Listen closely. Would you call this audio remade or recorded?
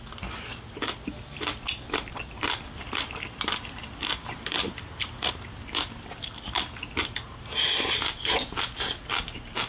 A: recorded